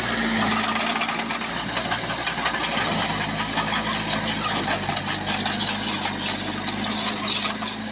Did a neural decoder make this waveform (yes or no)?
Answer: no